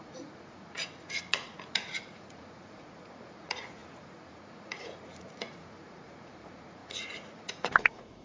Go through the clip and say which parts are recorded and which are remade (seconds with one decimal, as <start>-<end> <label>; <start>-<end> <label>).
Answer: 0.0-8.2 remade